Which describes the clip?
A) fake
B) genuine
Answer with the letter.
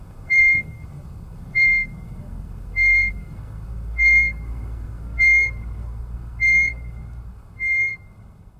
A